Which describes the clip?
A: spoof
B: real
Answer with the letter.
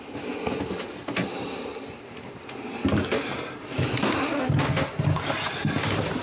B